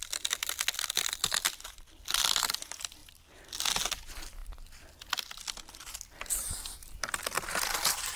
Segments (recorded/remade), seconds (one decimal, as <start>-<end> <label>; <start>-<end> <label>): 0.0-3.0 recorded; 3.0-3.6 remade; 3.6-5.8 recorded; 5.8-7.1 remade; 7.1-8.2 recorded